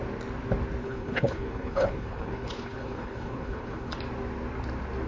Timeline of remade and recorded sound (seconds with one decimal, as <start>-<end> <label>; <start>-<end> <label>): 0.0-0.8 recorded; 0.8-3.9 remade; 3.9-5.1 recorded